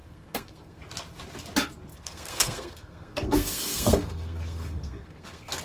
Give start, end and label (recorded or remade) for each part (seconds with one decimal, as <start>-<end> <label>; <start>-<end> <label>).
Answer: 0.0-0.8 remade; 0.8-1.9 recorded; 1.9-5.6 remade